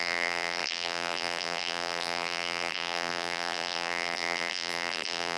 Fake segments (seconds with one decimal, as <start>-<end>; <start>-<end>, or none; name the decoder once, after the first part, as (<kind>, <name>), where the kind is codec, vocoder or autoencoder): 0.0-5.4 (vocoder, BigVGAN v2)